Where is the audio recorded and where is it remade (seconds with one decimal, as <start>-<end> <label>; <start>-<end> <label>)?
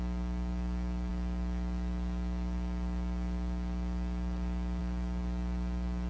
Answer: 0.0-6.1 recorded